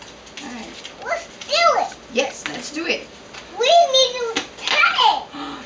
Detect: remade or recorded recorded